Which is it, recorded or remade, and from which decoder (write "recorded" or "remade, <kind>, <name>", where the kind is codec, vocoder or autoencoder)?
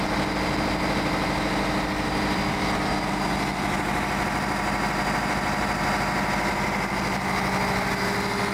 recorded